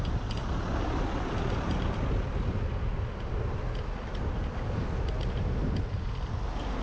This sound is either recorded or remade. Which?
recorded